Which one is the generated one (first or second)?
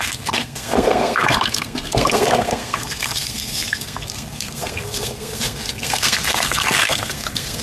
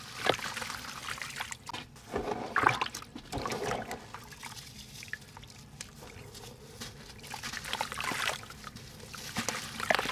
first